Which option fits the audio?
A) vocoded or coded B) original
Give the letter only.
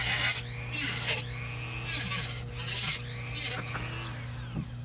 B